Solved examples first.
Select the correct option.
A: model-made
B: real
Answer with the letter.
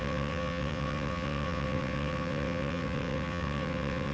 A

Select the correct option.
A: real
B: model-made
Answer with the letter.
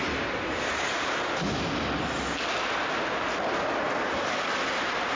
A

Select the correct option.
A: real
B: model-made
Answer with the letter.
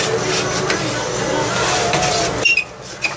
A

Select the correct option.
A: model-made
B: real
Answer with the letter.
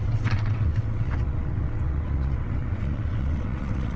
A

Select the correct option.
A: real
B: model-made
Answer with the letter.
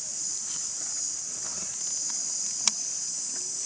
A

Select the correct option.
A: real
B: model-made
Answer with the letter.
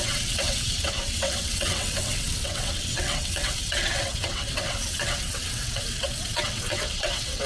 B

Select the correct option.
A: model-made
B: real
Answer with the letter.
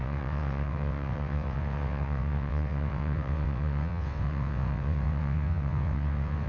A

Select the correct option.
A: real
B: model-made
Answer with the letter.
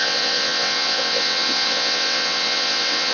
B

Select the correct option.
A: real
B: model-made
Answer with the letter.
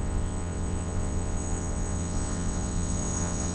B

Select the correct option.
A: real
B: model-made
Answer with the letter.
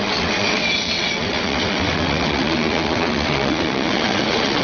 B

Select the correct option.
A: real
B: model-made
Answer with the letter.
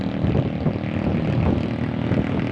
A